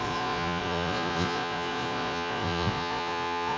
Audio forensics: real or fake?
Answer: fake